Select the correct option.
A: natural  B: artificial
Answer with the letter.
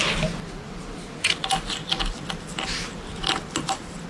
A